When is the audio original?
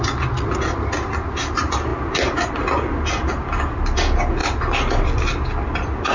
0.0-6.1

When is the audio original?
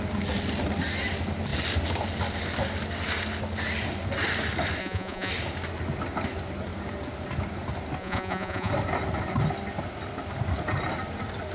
0.0-4.8; 5.3-8.0; 8.7-11.5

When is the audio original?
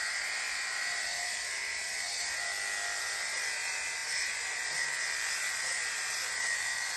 2.5-3.0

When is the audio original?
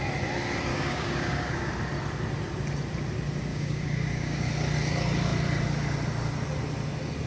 0.0-0.7; 1.7-3.5; 4.4-7.3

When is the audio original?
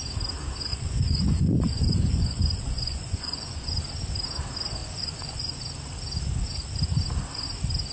0.0-0.7; 3.8-4.8; 5.6-7.9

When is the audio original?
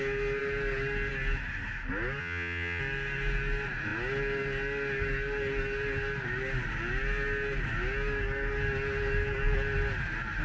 0.0-2.2; 2.8-10.4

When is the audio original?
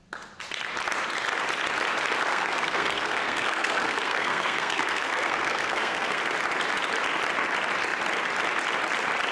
0.0-2.3; 6.2-9.3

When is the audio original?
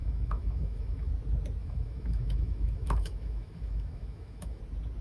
1.1-1.6; 4.6-5.0